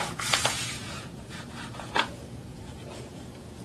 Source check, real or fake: fake